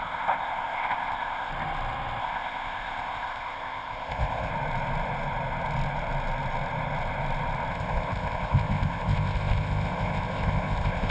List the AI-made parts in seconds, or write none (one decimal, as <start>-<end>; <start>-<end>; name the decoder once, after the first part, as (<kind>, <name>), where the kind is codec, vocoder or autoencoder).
0.0-1.5 (codec, ZipCodec); 2.2-4.5; 7.7-11.1